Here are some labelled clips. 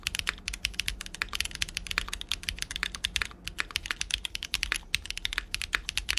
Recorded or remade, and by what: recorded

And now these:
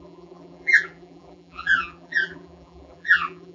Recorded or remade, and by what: remade, vocoder, BigVGAN v2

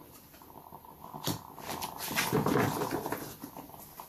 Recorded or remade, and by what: recorded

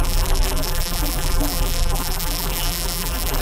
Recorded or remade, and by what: remade, vocoder, BigVGAN v2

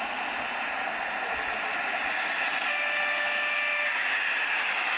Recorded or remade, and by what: recorded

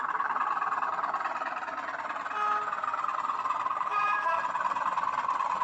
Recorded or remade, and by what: recorded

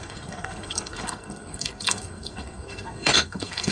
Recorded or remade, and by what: remade, codec, SNAC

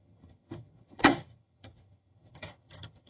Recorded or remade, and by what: remade, vocoder, HiFi-GAN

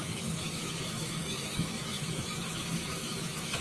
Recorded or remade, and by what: remade, autoencoder, DAC-VAE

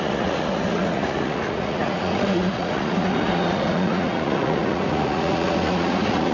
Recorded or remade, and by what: remade, vocoder, Vocos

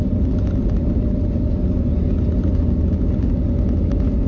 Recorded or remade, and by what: recorded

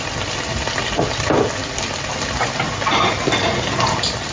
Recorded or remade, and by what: recorded